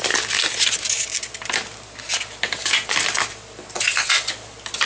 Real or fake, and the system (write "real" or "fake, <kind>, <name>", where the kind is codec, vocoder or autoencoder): real